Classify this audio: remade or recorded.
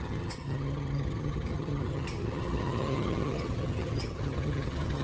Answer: remade